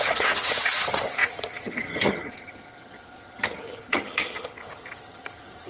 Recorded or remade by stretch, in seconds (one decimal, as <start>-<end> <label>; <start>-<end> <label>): 0.0-5.7 remade